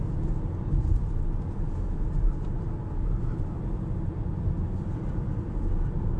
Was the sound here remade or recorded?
recorded